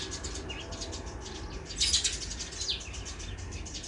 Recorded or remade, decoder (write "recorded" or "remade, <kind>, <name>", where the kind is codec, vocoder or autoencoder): recorded